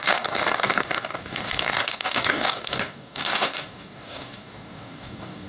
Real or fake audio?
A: fake